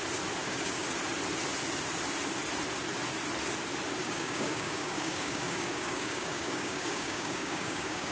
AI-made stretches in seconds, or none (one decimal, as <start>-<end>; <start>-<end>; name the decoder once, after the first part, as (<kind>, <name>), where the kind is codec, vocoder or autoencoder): 0.4-0.9 (codec, DAC); 4.0-8.1